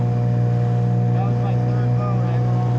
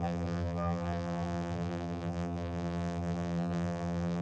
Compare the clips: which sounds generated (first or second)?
second